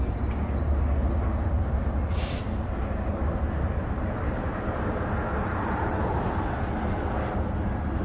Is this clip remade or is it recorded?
recorded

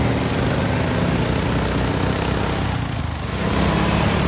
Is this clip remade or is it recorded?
recorded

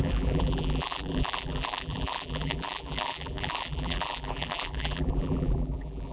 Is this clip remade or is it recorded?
remade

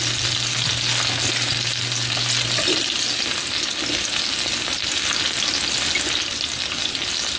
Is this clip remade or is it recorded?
recorded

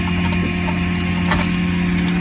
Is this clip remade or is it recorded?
recorded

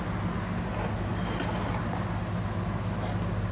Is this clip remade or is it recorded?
recorded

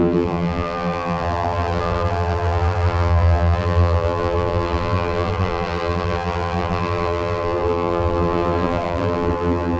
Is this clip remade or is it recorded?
remade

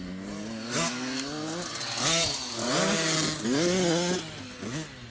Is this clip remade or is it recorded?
recorded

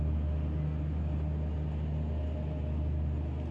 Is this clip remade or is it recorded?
recorded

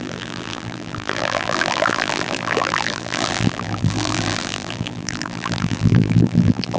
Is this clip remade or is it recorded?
remade